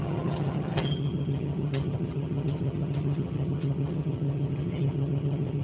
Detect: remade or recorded remade